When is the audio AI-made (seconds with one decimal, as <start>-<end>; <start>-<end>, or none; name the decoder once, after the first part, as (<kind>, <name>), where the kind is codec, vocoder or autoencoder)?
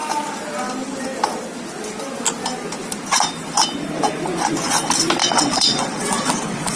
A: 5.2-6.8 (vocoder, WaveNeXt)